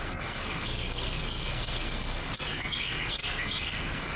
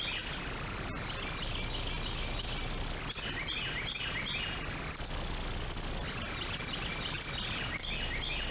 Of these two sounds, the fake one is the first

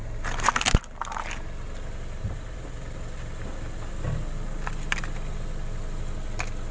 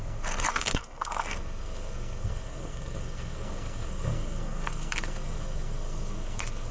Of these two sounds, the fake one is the second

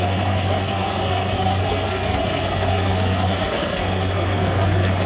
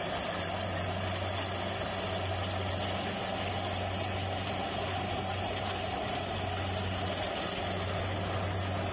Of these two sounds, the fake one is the first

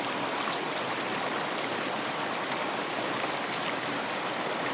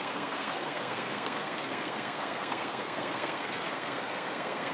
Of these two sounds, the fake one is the second